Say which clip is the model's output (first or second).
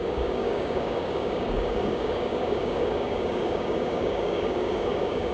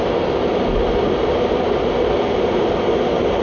first